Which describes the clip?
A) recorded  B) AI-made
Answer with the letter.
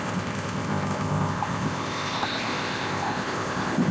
B